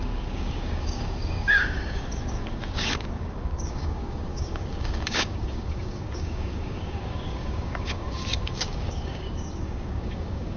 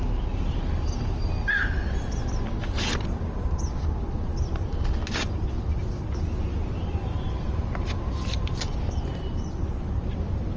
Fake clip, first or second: first